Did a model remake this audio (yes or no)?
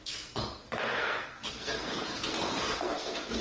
yes